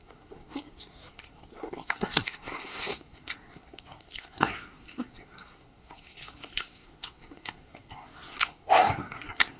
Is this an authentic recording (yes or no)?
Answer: no